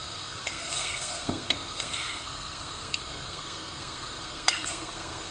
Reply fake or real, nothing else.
fake